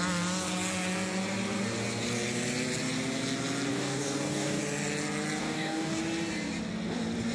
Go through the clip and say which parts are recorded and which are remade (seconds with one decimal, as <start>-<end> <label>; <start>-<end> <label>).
0.0-3.7 recorded; 3.7-4.6 remade; 4.6-5.4 recorded; 5.4-6.0 remade; 6.0-7.3 recorded